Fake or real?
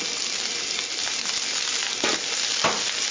real